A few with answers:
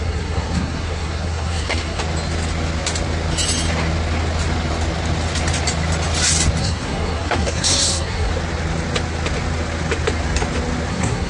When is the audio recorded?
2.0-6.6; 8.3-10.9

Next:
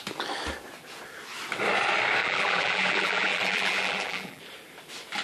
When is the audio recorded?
0.0-2.2; 4.4-5.2

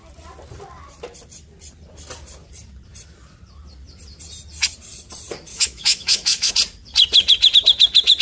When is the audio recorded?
0.0-5.5; 6.5-8.2

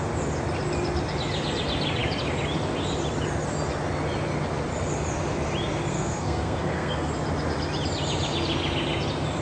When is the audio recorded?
0.0-5.9; 7.1-9.4

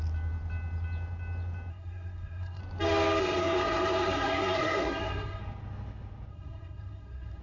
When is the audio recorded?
0.0-1.7; 2.6-3.2; 5.4-6.3